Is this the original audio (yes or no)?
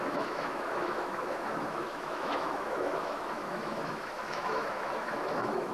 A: no